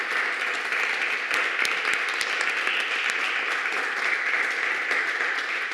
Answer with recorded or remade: recorded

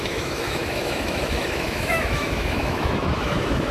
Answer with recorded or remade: remade